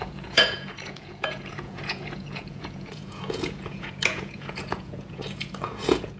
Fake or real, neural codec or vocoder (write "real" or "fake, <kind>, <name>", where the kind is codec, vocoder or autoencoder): fake, vocoder, Vocos